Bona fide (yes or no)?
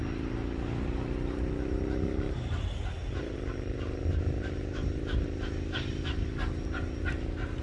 yes